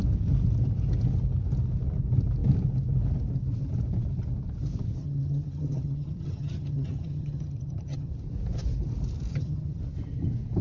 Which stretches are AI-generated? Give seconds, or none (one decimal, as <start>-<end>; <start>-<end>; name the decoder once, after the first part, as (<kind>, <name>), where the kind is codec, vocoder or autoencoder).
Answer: 5.0-8.1 (vocoder, HiFi-GAN); 9.3-9.8